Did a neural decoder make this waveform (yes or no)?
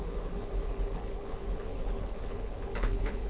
yes